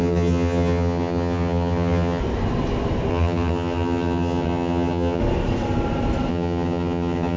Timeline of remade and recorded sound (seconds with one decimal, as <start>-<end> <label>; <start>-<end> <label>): 0.0-2.2 remade; 2.2-3.1 recorded; 3.1-5.2 remade; 5.2-6.3 recorded; 6.3-7.4 remade